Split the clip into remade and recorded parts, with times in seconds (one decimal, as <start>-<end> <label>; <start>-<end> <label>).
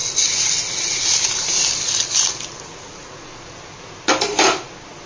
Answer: 0.0-5.1 recorded